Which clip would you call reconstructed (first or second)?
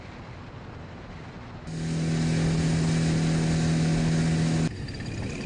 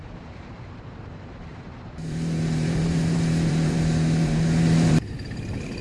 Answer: second